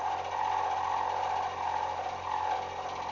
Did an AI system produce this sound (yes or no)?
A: no